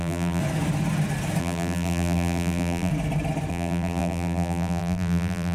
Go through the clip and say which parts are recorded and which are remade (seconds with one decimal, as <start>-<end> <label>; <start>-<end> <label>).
0.0-0.4 remade; 0.4-1.4 recorded; 1.4-2.9 remade; 2.9-3.5 recorded; 3.5-5.5 remade